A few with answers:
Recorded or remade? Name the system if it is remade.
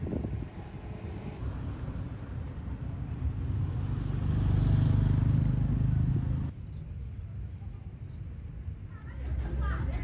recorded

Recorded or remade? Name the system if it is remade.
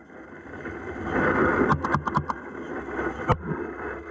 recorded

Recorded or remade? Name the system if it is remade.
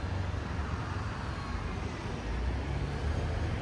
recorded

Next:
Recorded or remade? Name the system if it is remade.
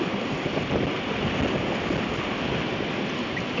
recorded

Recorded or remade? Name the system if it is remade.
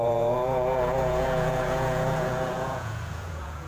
remade, vocoder, Vocos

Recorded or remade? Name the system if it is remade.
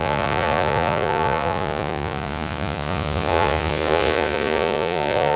remade, vocoder, Vocos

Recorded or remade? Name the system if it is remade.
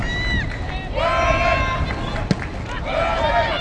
recorded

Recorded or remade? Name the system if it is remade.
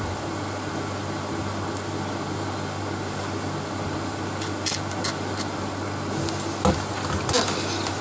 recorded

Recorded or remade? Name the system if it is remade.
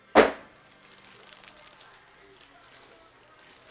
recorded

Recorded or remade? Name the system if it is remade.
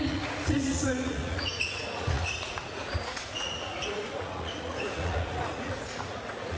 remade, vocoder, Vocos